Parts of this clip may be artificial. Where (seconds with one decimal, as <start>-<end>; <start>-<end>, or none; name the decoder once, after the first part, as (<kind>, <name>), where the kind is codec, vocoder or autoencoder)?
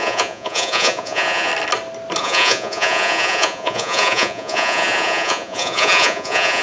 0.0-1.5 (vocoder, Vocos); 2.2-6.6